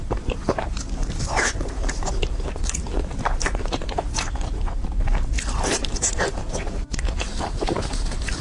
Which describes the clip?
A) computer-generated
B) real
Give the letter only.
A